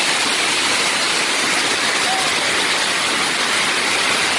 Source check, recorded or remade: recorded